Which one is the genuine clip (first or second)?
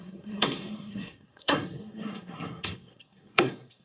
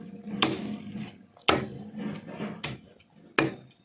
second